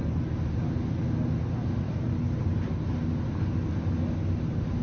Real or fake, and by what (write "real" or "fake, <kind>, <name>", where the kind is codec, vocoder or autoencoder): real